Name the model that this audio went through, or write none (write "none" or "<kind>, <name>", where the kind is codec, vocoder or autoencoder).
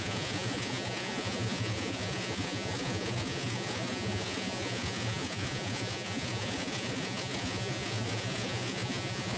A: vocoder, Vocos